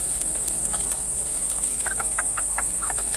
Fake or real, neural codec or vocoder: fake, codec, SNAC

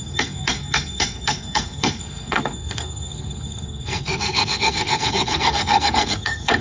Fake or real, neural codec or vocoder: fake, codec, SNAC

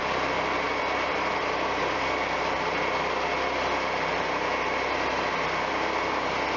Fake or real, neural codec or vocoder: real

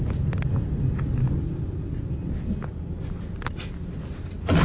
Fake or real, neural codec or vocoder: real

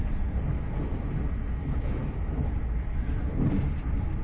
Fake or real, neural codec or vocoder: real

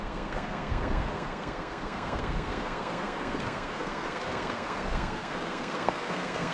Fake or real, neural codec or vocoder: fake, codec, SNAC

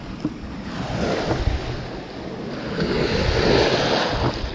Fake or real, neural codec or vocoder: real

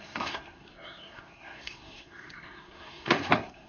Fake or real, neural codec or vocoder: fake, codec, SNAC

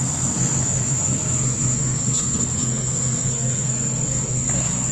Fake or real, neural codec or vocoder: fake, codec, SNAC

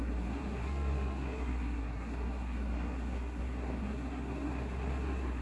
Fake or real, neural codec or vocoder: fake, codec, SNAC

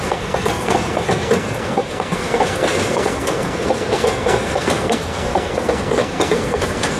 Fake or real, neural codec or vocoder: fake, codec, SNAC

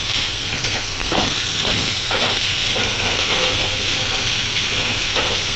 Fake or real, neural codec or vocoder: fake, codec, SNAC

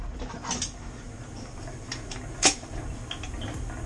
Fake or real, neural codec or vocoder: real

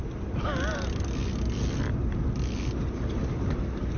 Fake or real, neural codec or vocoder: real